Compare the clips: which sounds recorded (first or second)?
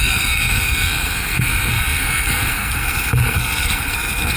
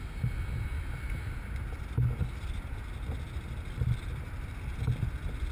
second